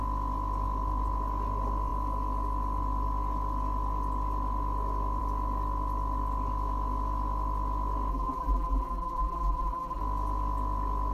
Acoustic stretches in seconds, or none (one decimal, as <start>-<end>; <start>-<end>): 0.0-8.1; 10.0-11.1